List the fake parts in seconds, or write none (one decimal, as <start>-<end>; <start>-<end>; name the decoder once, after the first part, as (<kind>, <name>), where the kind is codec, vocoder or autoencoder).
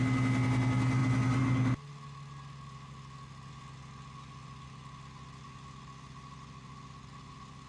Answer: none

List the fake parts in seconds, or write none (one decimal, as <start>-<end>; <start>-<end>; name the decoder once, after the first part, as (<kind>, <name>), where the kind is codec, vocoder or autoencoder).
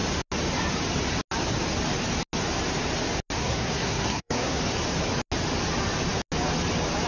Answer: 3.4-4.6 (codec, SNAC)